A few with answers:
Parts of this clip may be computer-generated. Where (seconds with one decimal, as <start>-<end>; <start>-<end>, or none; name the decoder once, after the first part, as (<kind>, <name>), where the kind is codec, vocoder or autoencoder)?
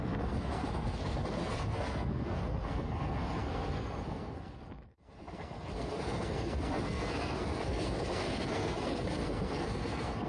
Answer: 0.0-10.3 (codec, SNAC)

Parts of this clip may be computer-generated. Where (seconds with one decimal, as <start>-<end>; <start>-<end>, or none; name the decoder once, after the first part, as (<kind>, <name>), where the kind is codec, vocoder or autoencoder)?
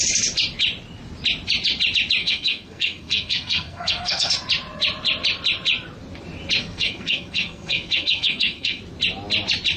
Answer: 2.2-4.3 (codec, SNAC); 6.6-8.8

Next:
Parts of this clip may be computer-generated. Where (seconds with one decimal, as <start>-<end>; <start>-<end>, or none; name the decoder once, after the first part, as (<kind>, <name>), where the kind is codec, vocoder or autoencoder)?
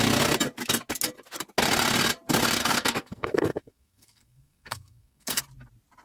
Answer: 2.6-5.4 (codec, SNAC)